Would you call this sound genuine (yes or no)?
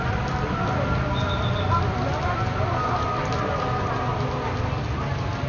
yes